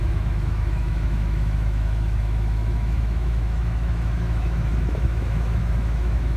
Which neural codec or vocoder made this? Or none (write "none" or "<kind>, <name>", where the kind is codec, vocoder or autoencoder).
autoencoder, DAC-VAE